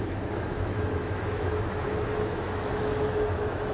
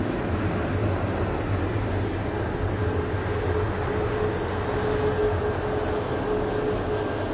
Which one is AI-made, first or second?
first